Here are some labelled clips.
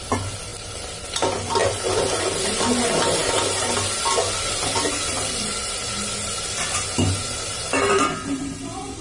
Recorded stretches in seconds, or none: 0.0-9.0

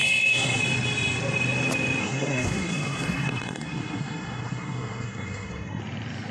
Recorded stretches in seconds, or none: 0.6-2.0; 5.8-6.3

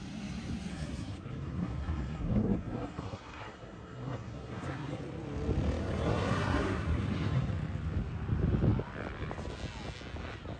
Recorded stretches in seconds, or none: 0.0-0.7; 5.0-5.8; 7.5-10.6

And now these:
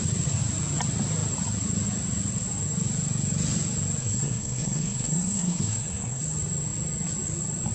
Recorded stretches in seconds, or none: 0.0-4.0; 6.2-7.7

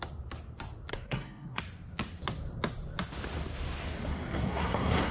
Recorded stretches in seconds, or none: 0.0-0.9; 1.6-4.1

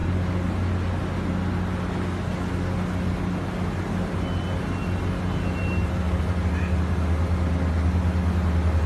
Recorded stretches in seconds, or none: 0.0-8.9